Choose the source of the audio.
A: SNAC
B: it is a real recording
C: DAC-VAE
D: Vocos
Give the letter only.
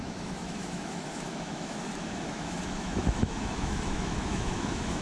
C